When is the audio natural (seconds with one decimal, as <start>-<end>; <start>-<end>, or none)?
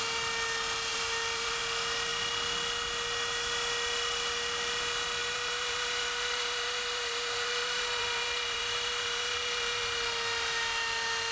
0.0-0.9; 1.6-5.2; 9.8-11.3